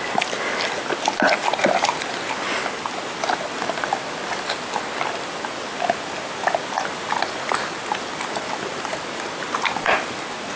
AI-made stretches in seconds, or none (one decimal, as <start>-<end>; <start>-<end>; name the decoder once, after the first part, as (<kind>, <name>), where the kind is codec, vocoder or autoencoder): none

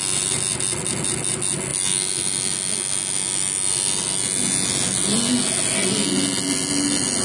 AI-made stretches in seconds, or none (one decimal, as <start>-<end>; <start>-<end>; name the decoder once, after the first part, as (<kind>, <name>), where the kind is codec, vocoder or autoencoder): none

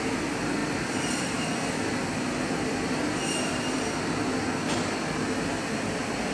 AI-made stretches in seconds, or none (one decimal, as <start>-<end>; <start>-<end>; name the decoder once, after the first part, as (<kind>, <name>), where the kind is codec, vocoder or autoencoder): none

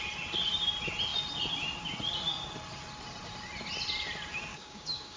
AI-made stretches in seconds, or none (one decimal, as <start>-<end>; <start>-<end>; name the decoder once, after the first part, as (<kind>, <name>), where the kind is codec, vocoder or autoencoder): 4.5-5.2 (codec, DAC)